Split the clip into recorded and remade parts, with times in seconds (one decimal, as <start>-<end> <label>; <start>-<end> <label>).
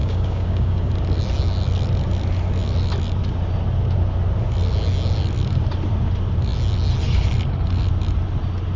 0.0-0.9 remade; 0.9-8.8 recorded